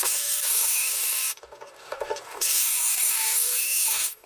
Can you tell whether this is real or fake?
fake